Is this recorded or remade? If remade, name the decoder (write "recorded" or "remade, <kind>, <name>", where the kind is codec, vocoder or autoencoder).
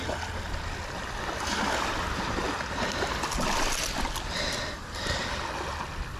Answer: recorded